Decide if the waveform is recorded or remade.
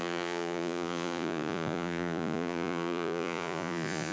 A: remade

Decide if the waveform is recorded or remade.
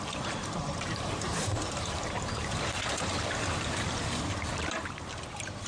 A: remade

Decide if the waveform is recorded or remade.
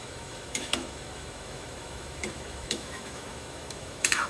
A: remade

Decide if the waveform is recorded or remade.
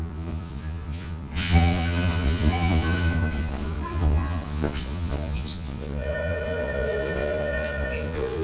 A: remade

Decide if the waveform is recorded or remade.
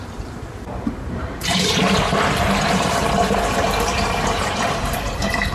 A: remade